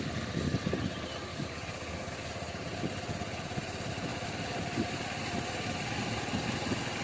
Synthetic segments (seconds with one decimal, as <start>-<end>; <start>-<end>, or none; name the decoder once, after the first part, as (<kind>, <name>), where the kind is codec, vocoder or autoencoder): 1.3-2.3 (codec, DAC)